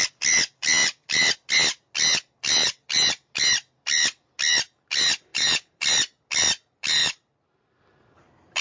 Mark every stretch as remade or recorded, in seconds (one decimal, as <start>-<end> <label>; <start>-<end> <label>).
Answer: 0.0-5.3 recorded; 5.3-5.8 remade; 5.8-8.6 recorded